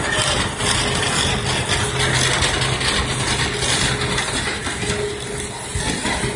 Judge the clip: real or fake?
real